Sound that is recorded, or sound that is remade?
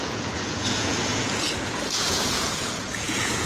remade